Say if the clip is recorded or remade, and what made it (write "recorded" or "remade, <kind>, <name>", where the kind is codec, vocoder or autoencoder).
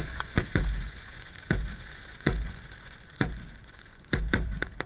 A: remade, vocoder, Vocos